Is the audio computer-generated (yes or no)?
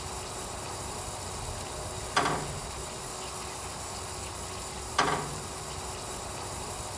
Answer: no